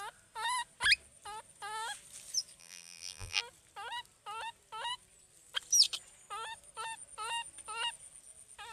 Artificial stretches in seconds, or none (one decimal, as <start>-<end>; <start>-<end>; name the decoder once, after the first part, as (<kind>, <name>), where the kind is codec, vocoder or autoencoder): 2.6-3.4 (vocoder, BigVGAN v2)